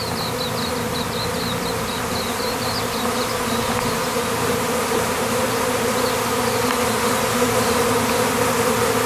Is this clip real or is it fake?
real